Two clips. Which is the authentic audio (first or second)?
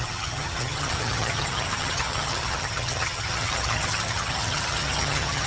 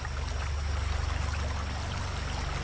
second